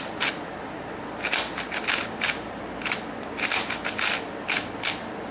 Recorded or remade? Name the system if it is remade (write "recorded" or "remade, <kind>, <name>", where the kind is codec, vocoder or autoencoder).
recorded